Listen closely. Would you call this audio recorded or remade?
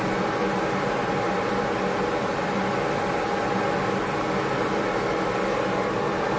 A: recorded